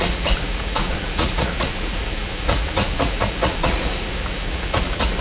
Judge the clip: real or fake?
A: fake